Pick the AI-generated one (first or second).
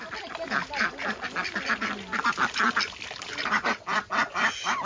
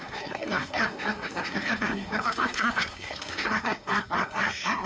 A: second